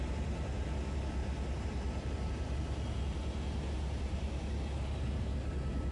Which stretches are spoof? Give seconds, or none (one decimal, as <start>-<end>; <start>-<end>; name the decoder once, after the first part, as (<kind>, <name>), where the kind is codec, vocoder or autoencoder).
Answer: none